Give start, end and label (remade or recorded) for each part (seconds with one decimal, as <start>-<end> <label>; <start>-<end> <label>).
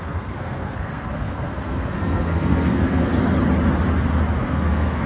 0.0-3.1 remade; 3.1-4.4 recorded; 4.4-5.1 remade